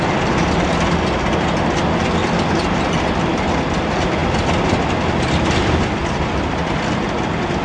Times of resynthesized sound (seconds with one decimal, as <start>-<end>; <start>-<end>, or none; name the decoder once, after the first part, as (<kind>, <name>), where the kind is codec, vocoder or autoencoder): 2.2-2.8 (vocoder, BigVGAN v2)